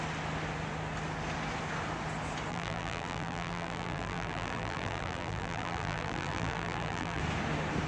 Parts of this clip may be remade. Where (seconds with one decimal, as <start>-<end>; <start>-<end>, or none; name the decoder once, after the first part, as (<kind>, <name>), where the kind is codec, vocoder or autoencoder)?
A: 2.5-7.2 (vocoder, BigVGAN v2)